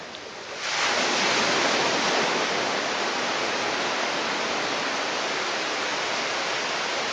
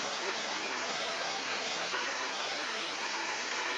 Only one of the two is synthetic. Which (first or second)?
second